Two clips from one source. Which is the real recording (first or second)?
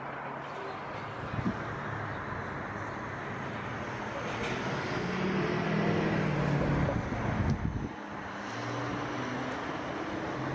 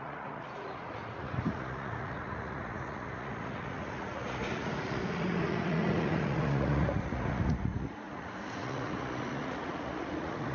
first